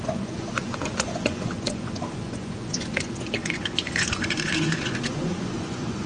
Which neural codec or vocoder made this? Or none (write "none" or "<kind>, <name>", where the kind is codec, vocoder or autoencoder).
vocoder, Vocos